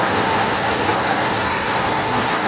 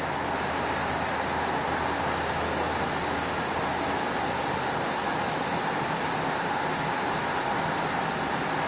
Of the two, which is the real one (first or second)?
second